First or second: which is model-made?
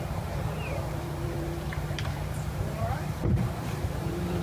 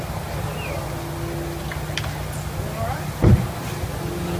first